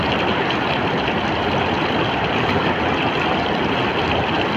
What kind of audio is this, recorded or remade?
recorded